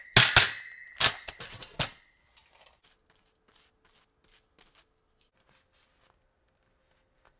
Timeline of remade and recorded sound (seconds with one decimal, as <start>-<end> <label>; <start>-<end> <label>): 0.0-7.4 recorded